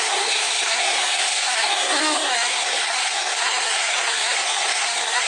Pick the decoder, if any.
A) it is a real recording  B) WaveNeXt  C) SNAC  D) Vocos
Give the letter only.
C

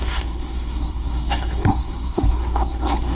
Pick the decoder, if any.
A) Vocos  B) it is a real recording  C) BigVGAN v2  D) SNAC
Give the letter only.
D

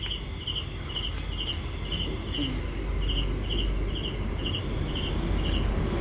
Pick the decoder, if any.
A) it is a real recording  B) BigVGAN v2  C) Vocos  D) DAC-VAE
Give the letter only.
A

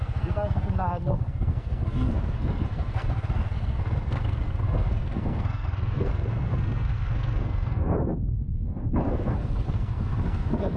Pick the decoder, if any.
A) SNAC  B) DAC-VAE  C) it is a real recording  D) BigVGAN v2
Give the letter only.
A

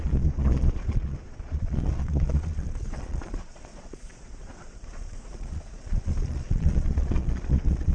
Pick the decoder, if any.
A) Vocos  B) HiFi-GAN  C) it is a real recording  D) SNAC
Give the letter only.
A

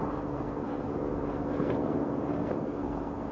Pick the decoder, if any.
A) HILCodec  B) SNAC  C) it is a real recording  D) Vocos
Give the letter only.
B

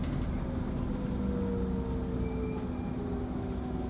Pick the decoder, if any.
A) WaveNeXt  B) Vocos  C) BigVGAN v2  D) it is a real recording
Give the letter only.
D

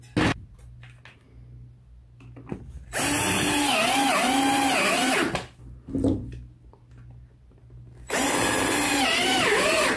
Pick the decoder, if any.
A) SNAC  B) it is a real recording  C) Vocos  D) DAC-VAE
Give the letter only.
B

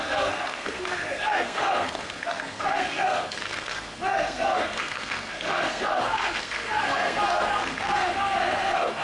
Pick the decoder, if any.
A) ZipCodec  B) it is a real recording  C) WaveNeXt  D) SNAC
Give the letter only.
D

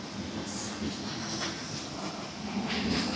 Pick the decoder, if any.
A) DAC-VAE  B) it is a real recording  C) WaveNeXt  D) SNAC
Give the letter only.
B